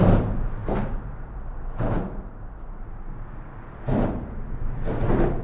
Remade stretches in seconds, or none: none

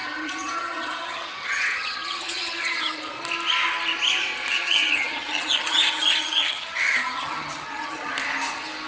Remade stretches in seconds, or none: 0.0-3.1 (vocoder, HiFi-GAN); 4.5-8.1

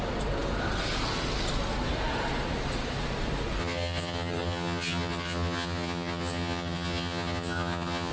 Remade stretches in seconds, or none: 3.6-8.1 (vocoder, HiFi-GAN)

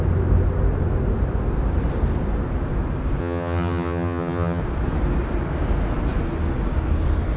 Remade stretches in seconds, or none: 3.2-4.6 (vocoder, HiFi-GAN)